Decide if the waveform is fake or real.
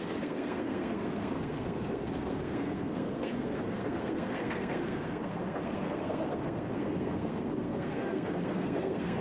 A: fake